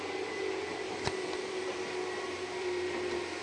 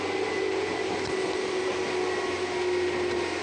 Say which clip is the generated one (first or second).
first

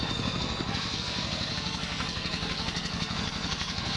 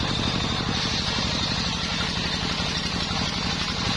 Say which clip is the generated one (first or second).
first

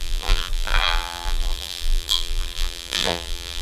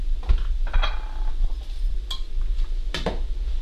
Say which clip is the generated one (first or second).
first